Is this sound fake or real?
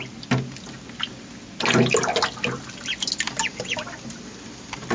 real